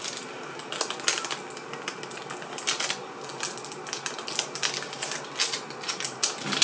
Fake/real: real